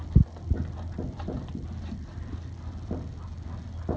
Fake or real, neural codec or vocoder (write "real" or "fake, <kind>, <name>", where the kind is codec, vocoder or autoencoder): real